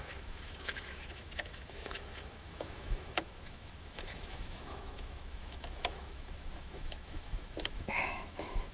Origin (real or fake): fake